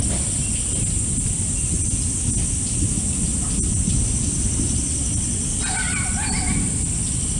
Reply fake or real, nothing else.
real